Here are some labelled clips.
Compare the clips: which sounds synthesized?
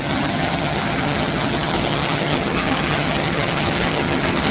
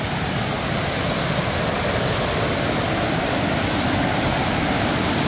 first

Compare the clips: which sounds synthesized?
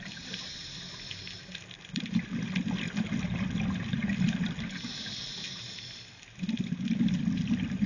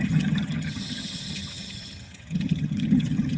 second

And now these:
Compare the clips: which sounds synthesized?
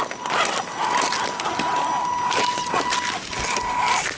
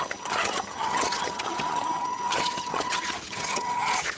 second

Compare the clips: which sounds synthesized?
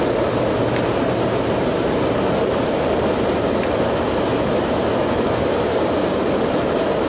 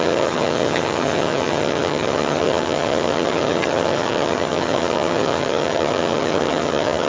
second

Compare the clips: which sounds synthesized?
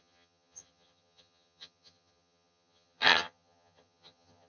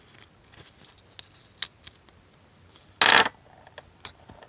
first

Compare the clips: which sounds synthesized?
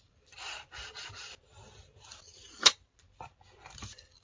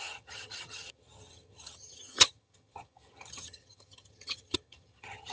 second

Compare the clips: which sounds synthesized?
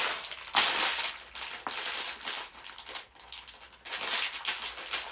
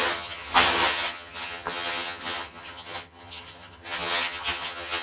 second